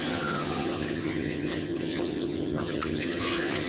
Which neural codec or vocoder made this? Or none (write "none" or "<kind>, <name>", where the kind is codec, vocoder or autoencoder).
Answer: vocoder, HiFi-GAN